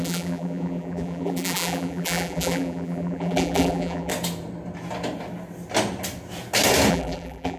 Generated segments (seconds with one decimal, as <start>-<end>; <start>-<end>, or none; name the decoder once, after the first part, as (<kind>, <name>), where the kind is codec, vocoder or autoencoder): 0.0-4.1 (vocoder, BigVGAN v2); 6.9-7.6